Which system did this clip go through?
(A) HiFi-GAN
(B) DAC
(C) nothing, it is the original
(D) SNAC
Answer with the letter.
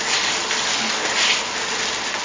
C